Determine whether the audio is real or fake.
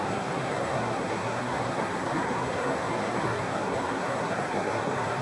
fake